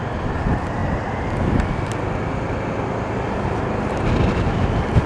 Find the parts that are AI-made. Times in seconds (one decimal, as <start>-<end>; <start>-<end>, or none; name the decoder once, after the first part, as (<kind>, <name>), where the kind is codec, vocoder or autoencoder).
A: none